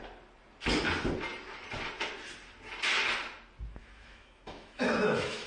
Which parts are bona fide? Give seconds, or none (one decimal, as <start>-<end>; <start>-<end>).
0.0-3.8